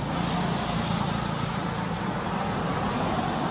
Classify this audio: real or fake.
real